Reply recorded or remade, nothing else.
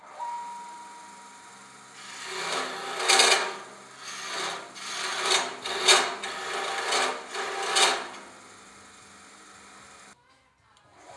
recorded